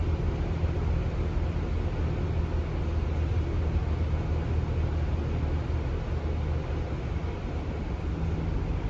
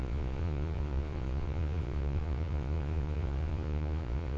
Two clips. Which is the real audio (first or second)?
first